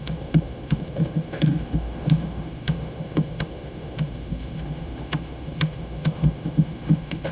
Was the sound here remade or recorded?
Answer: remade